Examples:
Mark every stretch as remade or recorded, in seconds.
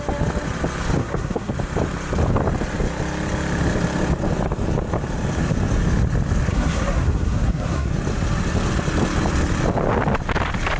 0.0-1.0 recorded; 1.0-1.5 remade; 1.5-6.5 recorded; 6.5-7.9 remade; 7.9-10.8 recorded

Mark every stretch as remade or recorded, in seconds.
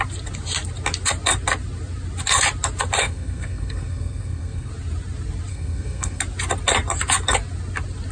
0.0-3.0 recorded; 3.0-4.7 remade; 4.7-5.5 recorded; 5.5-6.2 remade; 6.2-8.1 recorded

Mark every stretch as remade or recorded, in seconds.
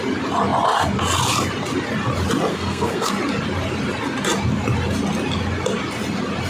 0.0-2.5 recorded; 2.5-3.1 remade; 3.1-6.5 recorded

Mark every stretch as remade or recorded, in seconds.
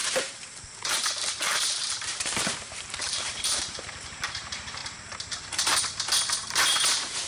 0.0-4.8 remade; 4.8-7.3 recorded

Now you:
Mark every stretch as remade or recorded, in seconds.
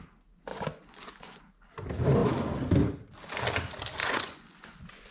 0.0-0.5 recorded; 0.5-1.4 remade; 1.4-4.0 recorded; 4.0-5.1 remade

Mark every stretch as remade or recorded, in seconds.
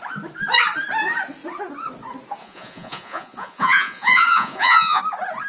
0.0-2.4 recorded; 2.4-5.0 remade; 5.0-5.5 recorded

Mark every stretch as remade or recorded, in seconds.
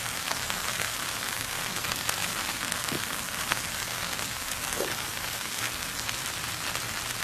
0.0-6.2 remade; 6.2-7.2 recorded